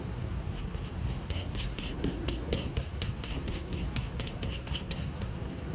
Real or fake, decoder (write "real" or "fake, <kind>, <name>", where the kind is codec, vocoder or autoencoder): fake, codec, SNAC